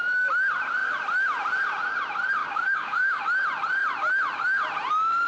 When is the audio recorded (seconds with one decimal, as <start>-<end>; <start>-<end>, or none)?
0.0-2.4; 3.2-5.3